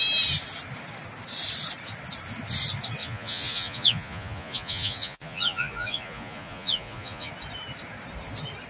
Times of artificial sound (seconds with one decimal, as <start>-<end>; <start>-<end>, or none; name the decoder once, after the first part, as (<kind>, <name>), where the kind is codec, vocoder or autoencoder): 3.0-7.3 (vocoder, Vocos)

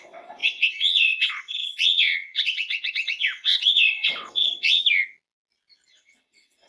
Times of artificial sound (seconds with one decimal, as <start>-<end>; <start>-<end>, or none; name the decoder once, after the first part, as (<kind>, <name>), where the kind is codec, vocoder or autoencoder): 0.0-4.8 (vocoder, WaveNeXt); 5.9-6.7

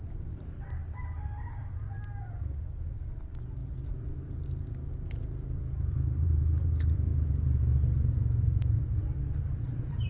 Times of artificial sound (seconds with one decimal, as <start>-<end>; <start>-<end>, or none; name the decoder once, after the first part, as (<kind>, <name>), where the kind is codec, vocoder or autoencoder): 0.0-0.8 (vocoder, BigVGAN v2); 2.2-7.1; 8.4-10.1

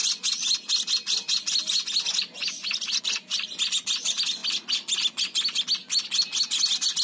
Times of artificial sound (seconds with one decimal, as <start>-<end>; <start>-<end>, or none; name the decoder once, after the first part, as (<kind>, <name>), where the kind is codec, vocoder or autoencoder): none